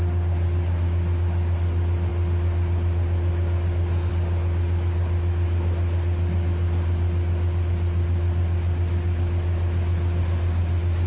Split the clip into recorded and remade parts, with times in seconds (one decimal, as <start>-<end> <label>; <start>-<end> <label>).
0.0-11.1 recorded